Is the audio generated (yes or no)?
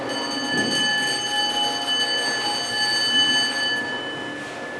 no